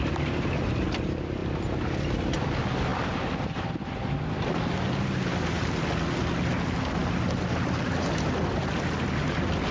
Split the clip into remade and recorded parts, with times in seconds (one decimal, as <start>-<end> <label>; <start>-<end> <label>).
0.0-9.7 recorded